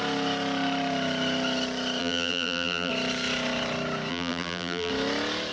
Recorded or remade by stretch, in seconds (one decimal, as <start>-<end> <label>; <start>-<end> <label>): 0.0-2.0 recorded; 2.0-2.9 remade; 2.9-4.1 recorded; 4.1-4.9 remade; 4.9-5.5 recorded